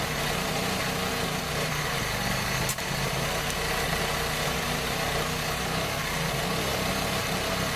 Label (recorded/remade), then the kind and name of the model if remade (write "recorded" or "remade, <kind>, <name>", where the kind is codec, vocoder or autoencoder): recorded